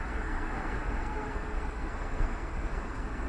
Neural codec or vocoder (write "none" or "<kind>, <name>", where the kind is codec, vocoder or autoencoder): codec, SNAC